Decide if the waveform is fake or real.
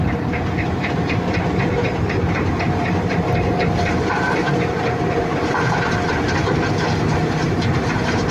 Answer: fake